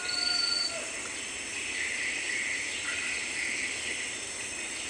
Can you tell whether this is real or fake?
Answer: real